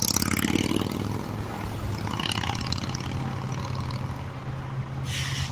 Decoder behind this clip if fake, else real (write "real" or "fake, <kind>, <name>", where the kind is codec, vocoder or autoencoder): real